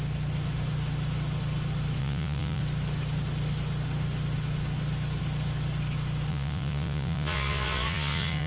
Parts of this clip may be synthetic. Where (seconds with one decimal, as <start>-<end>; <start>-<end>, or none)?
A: 2.0-2.6; 6.3-8.5